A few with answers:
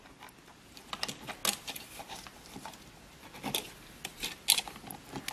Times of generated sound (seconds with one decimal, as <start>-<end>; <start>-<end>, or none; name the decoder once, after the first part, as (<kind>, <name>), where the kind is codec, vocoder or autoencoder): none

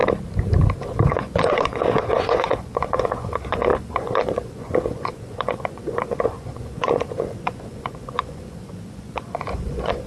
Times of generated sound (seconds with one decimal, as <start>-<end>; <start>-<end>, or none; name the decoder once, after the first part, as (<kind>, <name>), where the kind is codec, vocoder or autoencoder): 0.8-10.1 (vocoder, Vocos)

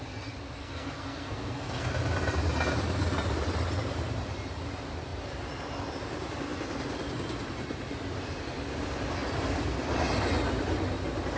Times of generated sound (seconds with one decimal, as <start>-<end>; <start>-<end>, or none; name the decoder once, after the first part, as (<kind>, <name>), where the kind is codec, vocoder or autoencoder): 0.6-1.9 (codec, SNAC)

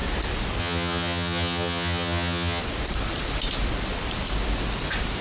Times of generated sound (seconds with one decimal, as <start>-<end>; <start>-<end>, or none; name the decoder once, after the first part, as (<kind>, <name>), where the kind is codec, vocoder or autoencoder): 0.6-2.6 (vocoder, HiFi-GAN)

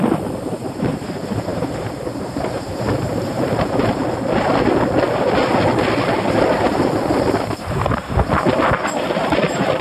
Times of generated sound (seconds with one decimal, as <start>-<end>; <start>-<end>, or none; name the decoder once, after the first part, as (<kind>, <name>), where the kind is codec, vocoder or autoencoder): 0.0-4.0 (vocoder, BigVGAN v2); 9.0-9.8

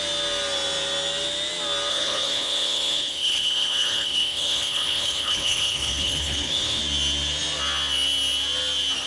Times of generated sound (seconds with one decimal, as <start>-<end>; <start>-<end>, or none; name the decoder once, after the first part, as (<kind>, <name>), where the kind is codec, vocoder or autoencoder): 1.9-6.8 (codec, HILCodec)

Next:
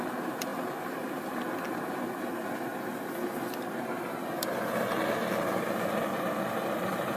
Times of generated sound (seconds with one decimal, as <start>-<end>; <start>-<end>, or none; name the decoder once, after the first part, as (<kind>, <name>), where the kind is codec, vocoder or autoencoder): 0.5-1.2 (vocoder, BigVGAN v2)

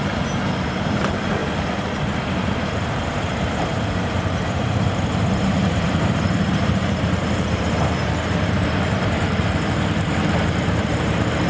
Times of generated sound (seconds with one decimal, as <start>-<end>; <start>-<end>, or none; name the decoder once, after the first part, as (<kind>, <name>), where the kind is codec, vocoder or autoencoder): 0.0-1.4 (vocoder, BigVGAN v2); 2.0-11.5